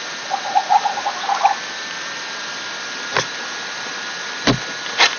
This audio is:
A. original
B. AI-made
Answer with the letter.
A